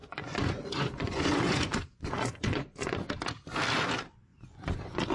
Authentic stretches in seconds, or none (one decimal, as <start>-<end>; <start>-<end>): 3.1-4.3